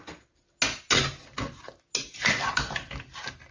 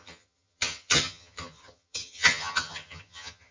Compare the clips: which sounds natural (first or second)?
first